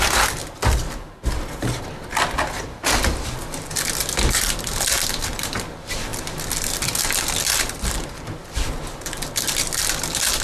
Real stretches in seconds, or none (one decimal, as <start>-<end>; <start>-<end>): 0.0-10.4